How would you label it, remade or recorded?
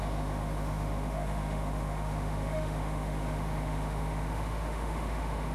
remade